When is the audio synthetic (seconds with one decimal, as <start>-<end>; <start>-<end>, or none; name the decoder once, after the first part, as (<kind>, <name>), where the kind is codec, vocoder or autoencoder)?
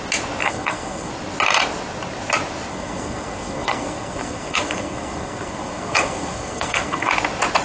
0.4-1.1 (codec, SNAC); 2.7-7.1